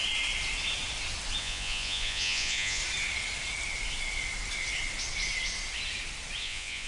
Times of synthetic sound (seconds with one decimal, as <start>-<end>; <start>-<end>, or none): 1.4-2.8; 6.4-6.9

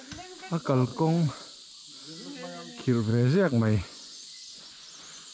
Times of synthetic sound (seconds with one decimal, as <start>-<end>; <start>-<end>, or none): 3.1-5.3

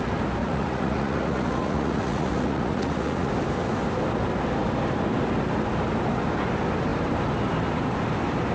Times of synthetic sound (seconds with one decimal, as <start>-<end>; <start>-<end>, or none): 0.4-3.3